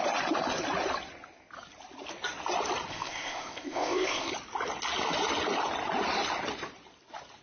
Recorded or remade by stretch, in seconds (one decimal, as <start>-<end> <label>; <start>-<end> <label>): 0.0-2.9 recorded; 2.9-4.3 remade; 4.3-7.4 recorded